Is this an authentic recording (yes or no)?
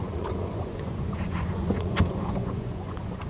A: no